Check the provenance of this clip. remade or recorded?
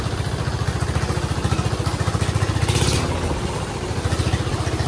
recorded